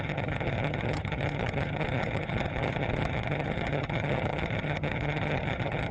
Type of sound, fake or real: fake